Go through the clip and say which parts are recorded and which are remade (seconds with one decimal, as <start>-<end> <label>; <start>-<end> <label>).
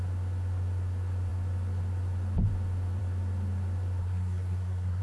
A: 0.0-4.0 recorded; 4.0-5.0 remade